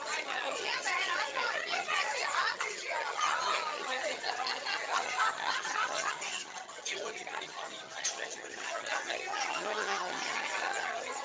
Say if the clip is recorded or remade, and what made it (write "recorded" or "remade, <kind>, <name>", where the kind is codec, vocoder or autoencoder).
remade, vocoder, HiFi-GAN